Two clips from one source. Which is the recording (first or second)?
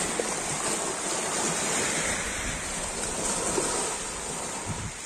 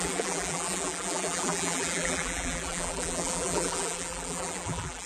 first